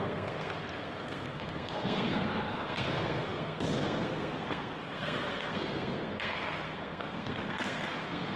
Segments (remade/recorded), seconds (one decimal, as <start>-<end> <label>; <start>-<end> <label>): 0.0-8.4 remade